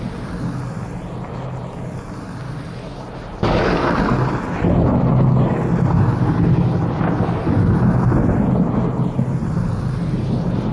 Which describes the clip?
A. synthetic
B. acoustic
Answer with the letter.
B